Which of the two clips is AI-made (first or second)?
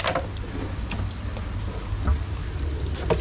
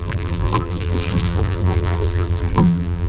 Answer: second